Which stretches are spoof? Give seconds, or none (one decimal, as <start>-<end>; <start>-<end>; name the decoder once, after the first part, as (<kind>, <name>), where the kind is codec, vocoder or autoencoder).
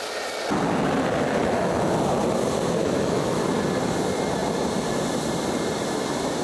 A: 1.4-1.9 (autoencoder, DAC-VAE); 2.8-3.4